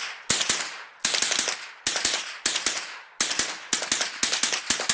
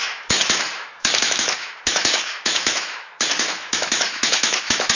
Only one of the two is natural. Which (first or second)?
first